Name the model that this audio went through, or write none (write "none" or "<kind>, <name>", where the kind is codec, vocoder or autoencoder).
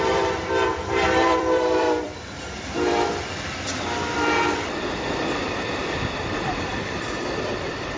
vocoder, BigVGAN v2